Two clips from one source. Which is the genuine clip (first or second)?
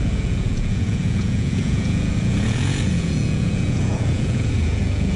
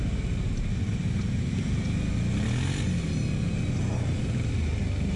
second